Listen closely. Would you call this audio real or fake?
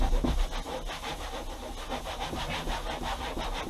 real